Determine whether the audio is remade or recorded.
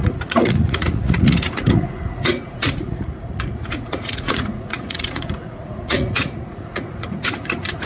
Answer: remade